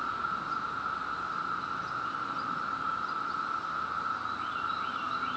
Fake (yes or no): no